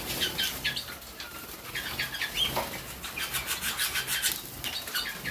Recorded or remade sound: recorded